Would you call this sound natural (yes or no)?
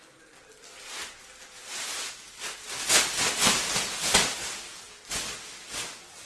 yes